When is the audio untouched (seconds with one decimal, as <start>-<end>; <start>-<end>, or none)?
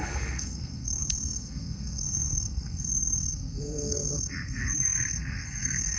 none